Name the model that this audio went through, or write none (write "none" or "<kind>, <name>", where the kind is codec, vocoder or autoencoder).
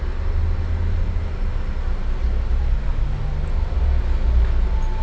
none